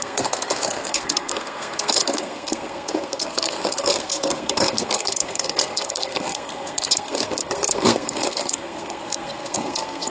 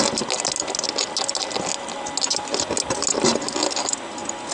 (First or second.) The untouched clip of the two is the second